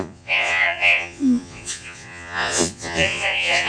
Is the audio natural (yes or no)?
no